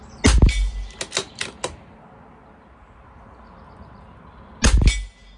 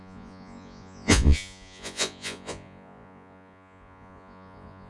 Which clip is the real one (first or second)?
first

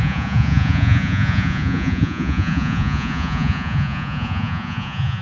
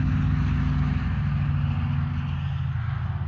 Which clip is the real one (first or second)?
second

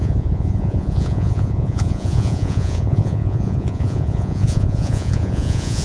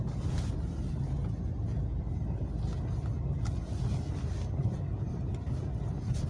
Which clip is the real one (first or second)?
second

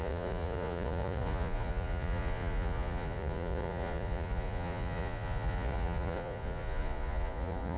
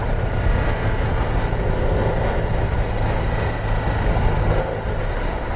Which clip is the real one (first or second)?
second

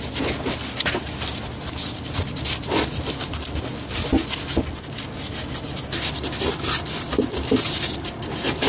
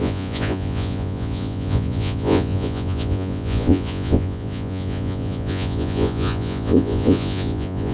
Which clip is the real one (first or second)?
first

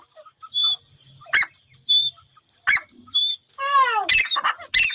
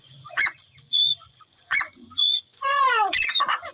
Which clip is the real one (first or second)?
first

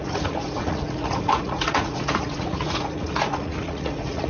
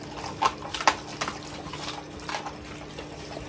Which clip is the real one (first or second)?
second